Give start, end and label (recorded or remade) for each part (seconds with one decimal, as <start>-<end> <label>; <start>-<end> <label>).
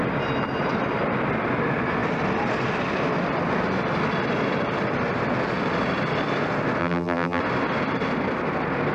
0.0-6.8 recorded; 6.8-7.4 remade; 7.4-8.9 recorded